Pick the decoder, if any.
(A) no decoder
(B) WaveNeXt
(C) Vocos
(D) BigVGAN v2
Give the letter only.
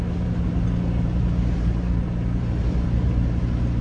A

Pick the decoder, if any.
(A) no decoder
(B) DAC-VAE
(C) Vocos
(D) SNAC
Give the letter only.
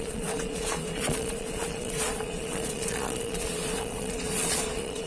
C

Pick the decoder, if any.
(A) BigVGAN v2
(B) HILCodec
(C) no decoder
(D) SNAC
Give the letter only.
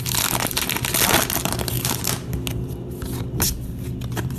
C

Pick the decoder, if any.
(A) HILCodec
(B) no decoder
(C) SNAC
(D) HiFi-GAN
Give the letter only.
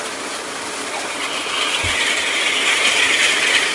B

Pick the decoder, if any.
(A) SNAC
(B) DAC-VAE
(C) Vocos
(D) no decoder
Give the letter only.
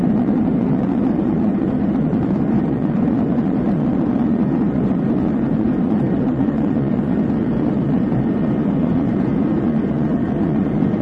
C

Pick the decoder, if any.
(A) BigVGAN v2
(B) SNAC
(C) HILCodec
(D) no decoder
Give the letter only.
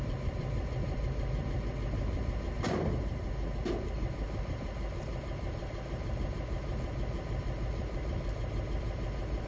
D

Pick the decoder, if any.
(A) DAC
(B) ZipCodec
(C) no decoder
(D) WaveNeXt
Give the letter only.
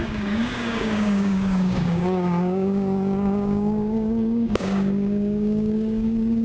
A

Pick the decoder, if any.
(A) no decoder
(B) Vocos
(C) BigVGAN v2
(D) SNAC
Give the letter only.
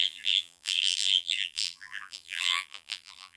C